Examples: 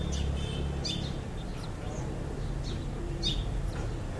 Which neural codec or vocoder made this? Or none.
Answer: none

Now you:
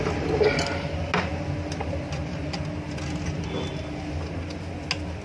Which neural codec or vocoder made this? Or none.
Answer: none